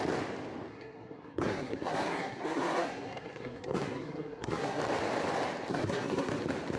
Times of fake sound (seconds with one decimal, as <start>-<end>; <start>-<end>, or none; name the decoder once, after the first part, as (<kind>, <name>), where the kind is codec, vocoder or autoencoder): 0.7-4.8 (codec, SNAC); 5.7-6.3